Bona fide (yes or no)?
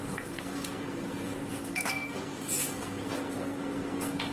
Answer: no